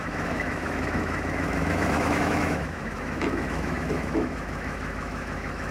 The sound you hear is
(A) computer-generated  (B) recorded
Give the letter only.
A